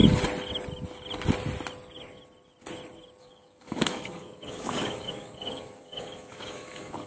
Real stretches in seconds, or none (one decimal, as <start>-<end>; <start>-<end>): 0.0-3.2